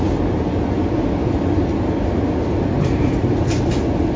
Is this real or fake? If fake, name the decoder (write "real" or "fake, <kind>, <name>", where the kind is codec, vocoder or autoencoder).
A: real